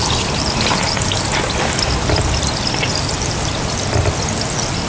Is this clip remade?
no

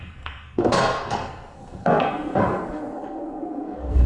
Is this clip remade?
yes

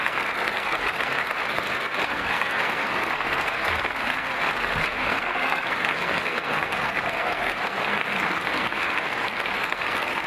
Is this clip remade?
yes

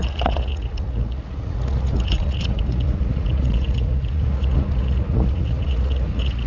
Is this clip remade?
yes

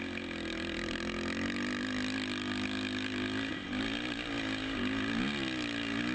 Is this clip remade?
no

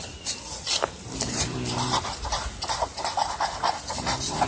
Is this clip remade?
no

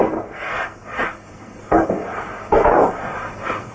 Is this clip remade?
yes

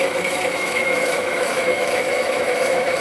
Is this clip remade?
yes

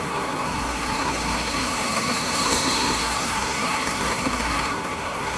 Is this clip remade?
yes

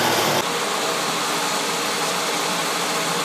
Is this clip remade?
no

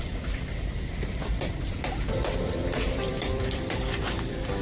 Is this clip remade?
yes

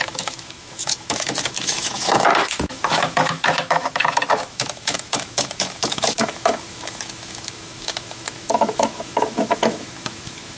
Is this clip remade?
yes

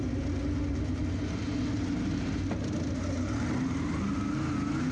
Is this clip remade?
no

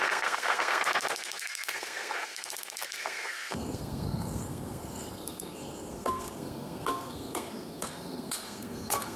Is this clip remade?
yes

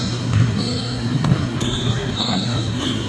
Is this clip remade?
yes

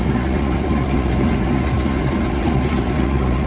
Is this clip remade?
yes